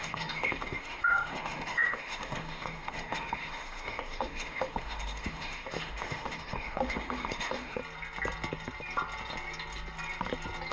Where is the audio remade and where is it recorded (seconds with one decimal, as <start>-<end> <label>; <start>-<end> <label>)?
0.0-7.8 remade; 7.8-10.7 recorded